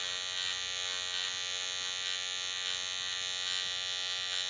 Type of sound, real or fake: real